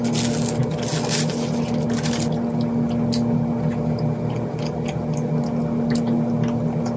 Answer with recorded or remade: recorded